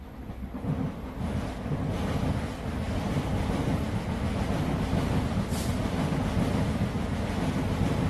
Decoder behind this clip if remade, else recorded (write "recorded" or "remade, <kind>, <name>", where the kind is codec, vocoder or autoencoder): recorded